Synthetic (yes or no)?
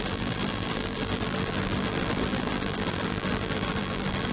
yes